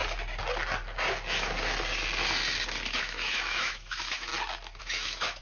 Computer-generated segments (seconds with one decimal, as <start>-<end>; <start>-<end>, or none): 3.0-4.3; 4.8-5.4

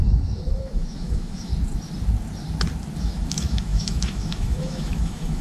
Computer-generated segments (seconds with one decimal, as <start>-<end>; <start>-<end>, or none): 0.0-1.5; 3.0-5.4

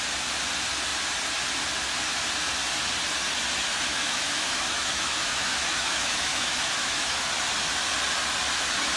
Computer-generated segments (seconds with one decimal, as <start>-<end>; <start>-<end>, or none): 3.7-7.3